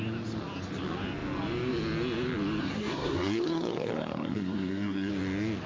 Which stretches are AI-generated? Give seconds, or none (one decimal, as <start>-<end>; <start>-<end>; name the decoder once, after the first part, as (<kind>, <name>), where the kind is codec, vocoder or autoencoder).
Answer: 2.6-5.1 (codec, SNAC)